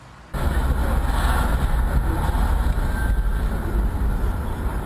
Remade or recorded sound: recorded